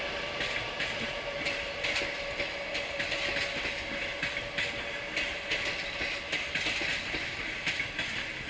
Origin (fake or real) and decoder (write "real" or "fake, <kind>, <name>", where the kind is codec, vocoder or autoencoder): real